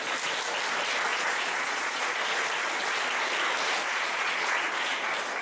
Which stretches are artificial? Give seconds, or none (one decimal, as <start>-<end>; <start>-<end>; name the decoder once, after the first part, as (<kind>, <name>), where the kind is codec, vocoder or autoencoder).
1.1-2.4 (vocoder, Vocos); 3.9-4.9